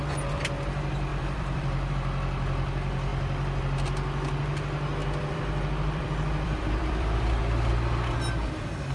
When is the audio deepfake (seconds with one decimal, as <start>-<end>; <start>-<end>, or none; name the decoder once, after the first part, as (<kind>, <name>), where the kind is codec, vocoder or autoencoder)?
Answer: 1.1-1.9 (vocoder, BigVGAN v2); 5.0-7.4